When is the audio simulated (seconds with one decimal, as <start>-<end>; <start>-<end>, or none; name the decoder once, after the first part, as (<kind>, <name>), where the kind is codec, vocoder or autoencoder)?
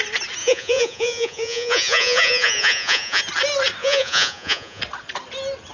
0.4-3.2 (vocoder, Vocos); 3.8-4.8